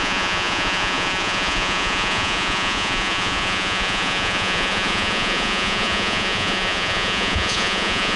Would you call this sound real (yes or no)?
no